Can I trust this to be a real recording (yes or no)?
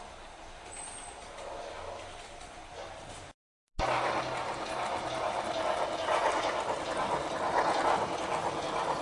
yes